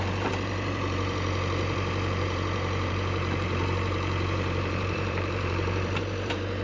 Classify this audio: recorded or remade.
remade